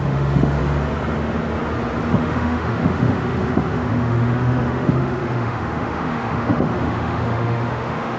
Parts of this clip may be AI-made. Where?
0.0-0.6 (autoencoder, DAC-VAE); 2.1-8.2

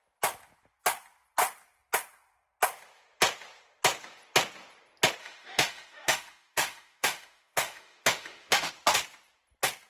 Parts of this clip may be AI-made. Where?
5.2-8.7 (autoencoder, DAC-VAE)

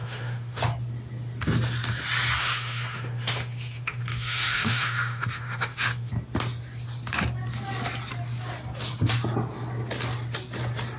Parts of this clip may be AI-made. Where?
0.0-0.6 (autoencoder, DAC-VAE); 2.4-6.1

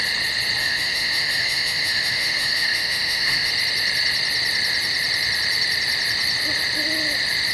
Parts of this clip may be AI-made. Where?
0.6-3.5 (autoencoder, DAC-VAE)